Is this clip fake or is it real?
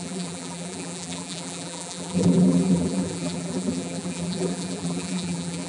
fake